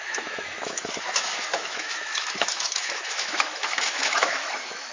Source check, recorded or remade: remade